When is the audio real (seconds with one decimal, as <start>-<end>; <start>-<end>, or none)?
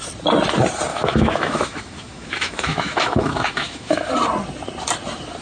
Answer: 0.0-0.9; 4.1-5.4